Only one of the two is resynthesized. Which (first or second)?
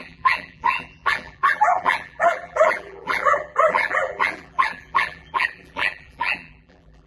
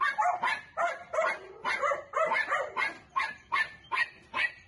first